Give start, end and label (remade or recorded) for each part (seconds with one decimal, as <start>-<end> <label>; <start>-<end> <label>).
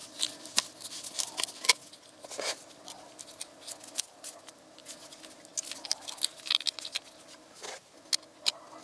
0.0-8.8 recorded